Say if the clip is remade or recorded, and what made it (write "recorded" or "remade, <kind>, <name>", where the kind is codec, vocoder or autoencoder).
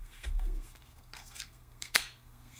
remade, codec, SNAC